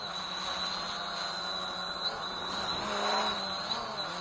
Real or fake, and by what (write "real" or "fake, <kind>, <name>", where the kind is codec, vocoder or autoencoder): real